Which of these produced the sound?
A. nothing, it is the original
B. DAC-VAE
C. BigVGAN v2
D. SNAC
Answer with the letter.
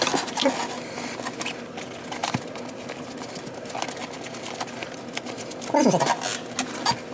A